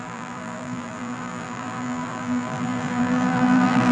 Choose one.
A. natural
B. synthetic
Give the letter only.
B